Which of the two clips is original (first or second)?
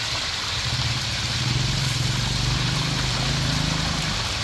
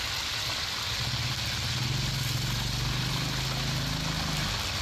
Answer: second